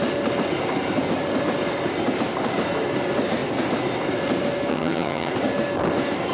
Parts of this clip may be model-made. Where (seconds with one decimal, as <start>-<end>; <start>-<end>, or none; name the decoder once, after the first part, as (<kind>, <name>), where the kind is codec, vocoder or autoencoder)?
4.7-5.3 (vocoder, HiFi-GAN)